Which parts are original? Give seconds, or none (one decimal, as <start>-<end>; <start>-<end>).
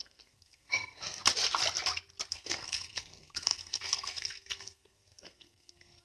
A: 1.2-2.3